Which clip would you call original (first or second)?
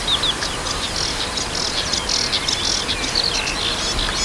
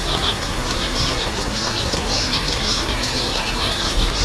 first